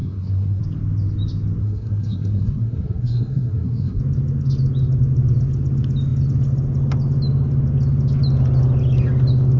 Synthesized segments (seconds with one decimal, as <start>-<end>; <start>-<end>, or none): 0.0-0.6; 1.6-4.0

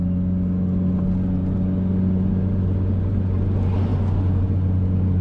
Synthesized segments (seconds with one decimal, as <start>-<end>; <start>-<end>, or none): none

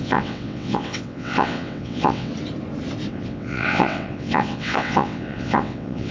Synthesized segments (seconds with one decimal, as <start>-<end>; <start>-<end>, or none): 0.0-2.3; 3.1-6.1

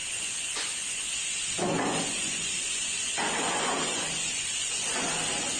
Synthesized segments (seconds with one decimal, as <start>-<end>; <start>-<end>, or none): 0.0-1.1; 1.7-5.1

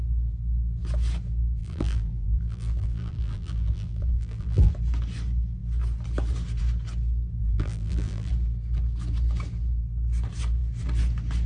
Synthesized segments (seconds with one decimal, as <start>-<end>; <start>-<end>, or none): 1.6-4.7; 7.4-8.3

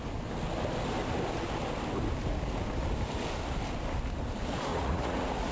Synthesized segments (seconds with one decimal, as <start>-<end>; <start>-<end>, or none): 4.7-5.5